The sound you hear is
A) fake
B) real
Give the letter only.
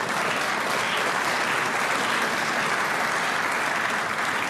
B